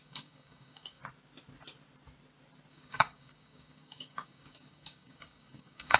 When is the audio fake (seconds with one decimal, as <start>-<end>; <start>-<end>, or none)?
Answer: 0.0-1.0; 2.7-6.0